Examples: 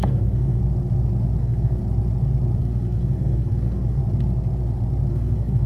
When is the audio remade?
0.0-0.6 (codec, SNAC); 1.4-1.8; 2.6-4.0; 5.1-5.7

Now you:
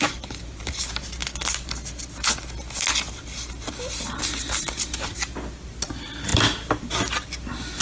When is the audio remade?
none

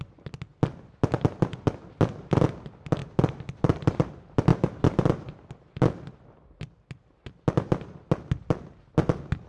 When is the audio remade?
3.0-4.1 (vocoder, BigVGAN v2)

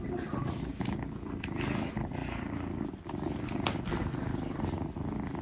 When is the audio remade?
none

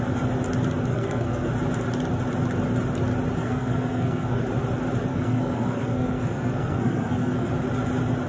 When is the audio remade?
0.9-1.5 (codec, SNAC); 3.4-4.4; 5.1-7.5

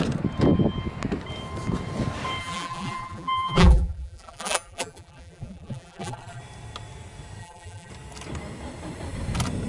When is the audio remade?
2.4-6.4 (vocoder, BigVGAN v2); 7.4-7.9